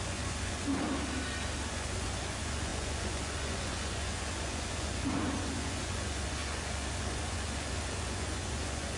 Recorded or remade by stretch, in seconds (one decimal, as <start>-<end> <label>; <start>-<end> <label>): 0.0-0.7 remade; 0.7-1.7 recorded; 1.7-9.0 remade